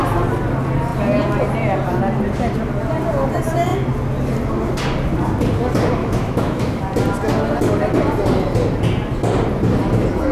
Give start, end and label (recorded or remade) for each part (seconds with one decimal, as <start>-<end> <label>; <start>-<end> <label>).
0.0-6.0 recorded; 6.0-6.8 remade; 6.8-10.3 recorded